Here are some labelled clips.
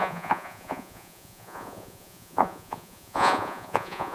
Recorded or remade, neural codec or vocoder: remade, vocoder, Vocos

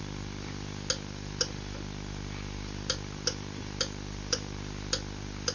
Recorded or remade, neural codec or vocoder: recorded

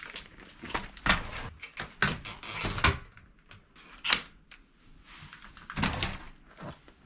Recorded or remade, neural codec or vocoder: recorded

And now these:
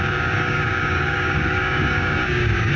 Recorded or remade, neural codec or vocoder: remade, codec, DAC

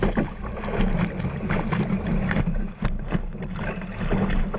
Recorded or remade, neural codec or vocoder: recorded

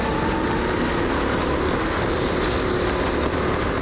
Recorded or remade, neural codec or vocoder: recorded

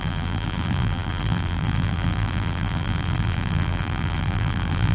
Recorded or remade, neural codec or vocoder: remade, vocoder, BigVGAN v2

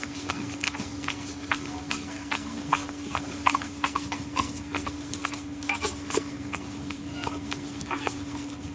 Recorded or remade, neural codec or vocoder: remade, codec, SNAC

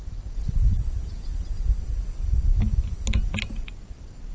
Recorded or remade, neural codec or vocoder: recorded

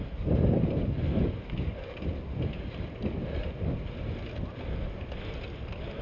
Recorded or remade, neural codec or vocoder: recorded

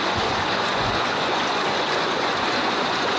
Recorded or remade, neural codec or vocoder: remade, vocoder, Vocos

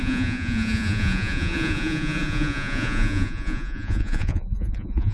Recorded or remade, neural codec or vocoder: remade, vocoder, Vocos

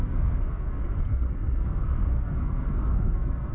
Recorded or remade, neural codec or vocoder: remade, codec, SNAC